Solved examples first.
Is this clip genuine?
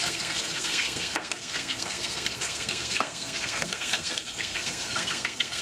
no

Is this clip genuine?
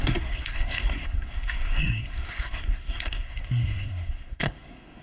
no